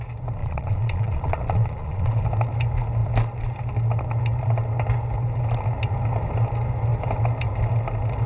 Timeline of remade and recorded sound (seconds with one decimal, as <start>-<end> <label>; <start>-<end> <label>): 0.0-0.4 recorded; 0.4-2.2 remade; 2.2-8.3 recorded

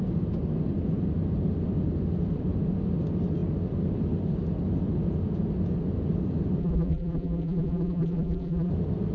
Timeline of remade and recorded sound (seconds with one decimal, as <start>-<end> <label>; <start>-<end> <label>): 0.0-6.6 recorded; 6.6-8.7 remade; 8.7-9.1 recorded

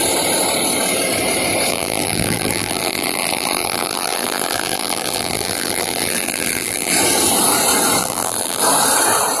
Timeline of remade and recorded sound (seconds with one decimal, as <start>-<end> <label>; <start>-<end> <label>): 0.0-1.7 recorded; 1.7-6.9 remade; 6.9-8.0 recorded; 8.0-8.6 remade; 8.6-9.4 recorded

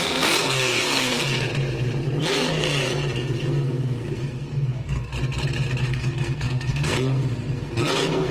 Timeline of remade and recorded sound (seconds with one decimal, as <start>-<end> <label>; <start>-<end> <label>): 0.0-1.5 remade; 1.5-2.2 recorded; 2.2-5.1 remade; 5.1-5.8 recorded; 5.8-8.3 remade

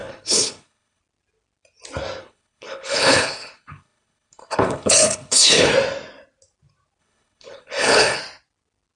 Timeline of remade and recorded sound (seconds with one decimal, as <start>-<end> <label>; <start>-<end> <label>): 0.0-1.0 remade; 1.0-2.2 recorded; 2.2-5.7 remade; 5.7-7.0 recorded; 7.0-8.2 remade; 8.2-9.0 recorded

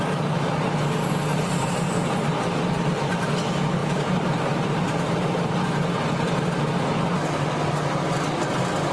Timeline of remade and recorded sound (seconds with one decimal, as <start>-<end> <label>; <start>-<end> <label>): 0.0-1.3 recorded; 1.3-1.9 remade; 1.9-3.8 recorded; 3.8-5.5 remade; 5.5-8.9 recorded

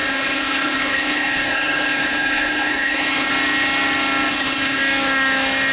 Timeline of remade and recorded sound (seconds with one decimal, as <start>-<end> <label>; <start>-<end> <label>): 0.0-3.3 remade; 3.3-4.3 recorded; 4.3-4.8 remade; 4.8-5.7 recorded

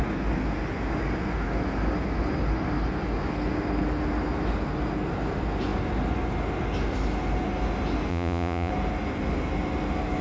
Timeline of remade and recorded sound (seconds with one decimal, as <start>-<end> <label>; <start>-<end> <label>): 0.0-8.1 recorded; 8.1-8.7 remade; 8.7-10.2 recorded